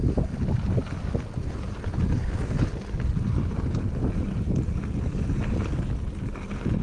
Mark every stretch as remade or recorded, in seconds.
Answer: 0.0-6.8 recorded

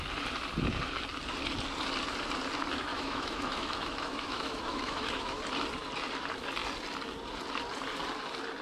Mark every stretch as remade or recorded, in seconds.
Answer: 0.0-2.9 recorded; 2.9-5.4 remade; 5.4-8.6 recorded

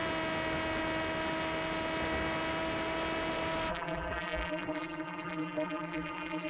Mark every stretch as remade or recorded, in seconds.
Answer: 0.0-3.7 recorded; 3.7-6.5 remade

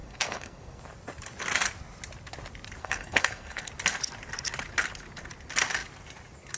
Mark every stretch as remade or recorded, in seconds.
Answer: 0.0-0.8 remade; 0.8-2.8 recorded; 2.8-3.7 remade; 3.7-6.6 recorded

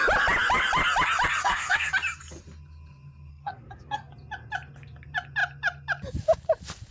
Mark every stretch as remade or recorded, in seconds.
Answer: 0.0-1.4 recorded; 1.4-1.9 remade; 1.9-3.3 recorded; 3.3-4.1 remade; 4.1-6.9 recorded

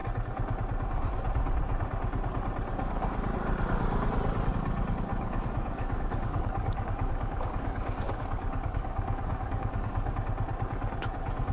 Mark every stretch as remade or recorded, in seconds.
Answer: 0.0-5.1 recorded; 5.1-10.1 remade; 10.1-11.5 recorded

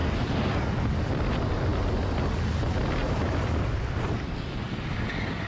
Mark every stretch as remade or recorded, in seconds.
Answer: 0.0-5.5 recorded

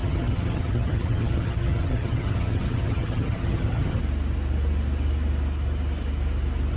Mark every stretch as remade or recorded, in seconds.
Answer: 0.0-4.0 remade; 4.0-6.8 recorded